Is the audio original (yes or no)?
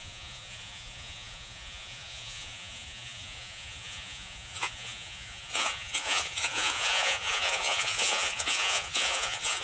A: no